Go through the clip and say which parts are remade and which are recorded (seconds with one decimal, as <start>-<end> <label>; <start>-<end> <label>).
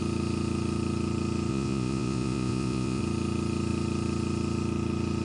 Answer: 0.0-1.5 recorded; 1.5-3.0 remade; 3.0-5.2 recorded